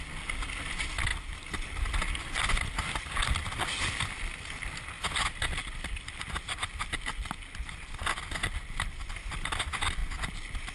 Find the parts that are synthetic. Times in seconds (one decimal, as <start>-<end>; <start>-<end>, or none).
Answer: none